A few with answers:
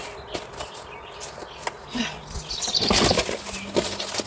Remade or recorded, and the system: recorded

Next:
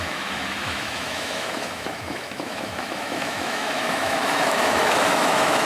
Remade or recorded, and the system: remade, autoencoder, DAC-VAE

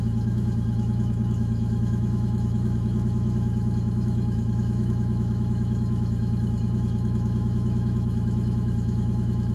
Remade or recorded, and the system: remade, autoencoder, DAC-VAE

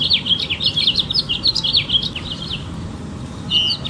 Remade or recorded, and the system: recorded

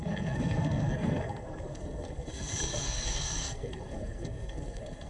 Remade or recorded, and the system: remade, codec, SNAC